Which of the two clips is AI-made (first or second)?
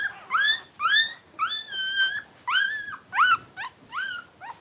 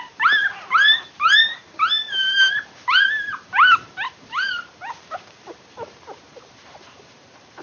second